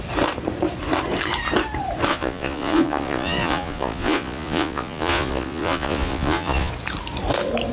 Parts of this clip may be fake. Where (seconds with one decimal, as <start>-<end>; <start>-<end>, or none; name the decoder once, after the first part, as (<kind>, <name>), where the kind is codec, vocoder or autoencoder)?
2.1-6.7 (vocoder, Vocos)